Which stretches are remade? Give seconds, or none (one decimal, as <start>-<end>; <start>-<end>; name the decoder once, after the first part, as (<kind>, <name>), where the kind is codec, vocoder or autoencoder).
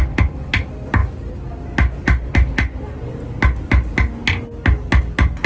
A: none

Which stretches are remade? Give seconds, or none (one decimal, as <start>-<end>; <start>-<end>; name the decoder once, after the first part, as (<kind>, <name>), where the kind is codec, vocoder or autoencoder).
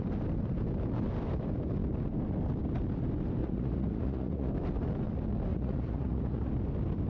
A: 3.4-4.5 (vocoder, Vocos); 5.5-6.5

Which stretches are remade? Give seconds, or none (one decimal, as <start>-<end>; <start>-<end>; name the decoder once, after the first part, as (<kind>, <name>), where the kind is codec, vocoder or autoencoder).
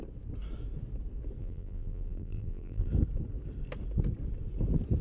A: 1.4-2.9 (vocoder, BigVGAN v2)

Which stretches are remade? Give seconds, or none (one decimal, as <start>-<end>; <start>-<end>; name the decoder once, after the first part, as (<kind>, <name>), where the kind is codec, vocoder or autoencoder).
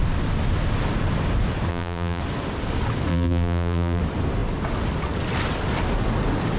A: 1.7-2.2 (vocoder, BigVGAN v2); 3.1-4.0